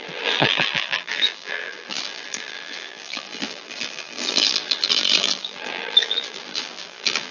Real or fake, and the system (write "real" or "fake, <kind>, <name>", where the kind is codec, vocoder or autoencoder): fake, vocoder, BigVGAN v2